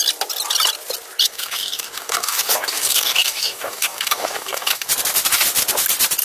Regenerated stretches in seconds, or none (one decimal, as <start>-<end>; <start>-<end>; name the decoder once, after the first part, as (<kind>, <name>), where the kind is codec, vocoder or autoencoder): 1.2-4.9 (codec, DAC)